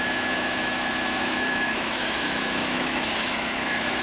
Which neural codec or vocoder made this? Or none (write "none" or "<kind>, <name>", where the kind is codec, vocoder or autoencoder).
autoencoder, DAC-VAE